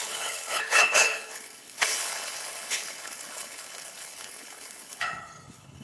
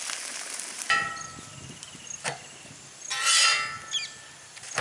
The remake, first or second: first